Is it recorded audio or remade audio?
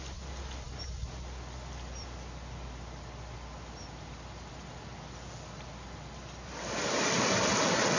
recorded